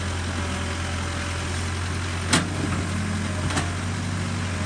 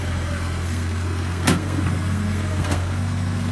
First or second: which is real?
first